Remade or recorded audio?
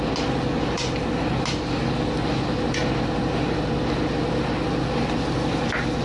recorded